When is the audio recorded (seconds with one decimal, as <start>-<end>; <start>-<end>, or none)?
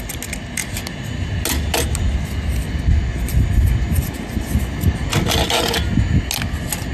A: 0.0-6.9